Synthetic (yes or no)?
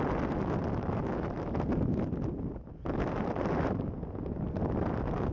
no